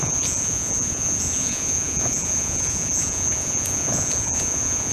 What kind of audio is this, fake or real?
fake